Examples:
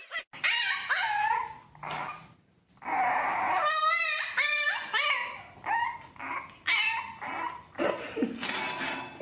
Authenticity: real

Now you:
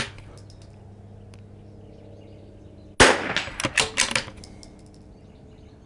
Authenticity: real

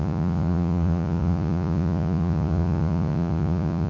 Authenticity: fake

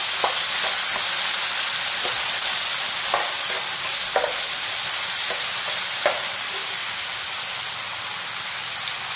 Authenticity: real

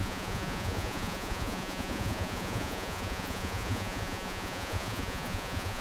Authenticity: fake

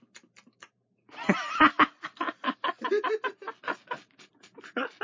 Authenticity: real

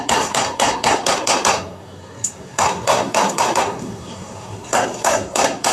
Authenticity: fake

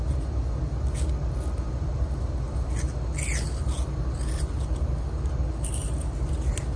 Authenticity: real